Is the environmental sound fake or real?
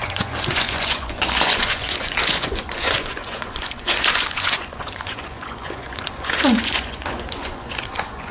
fake